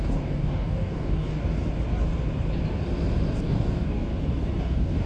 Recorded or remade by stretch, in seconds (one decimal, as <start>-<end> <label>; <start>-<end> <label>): 0.0-1.4 remade; 1.4-3.4 recorded; 3.4-4.1 remade; 4.1-4.6 recorded; 4.6-5.1 remade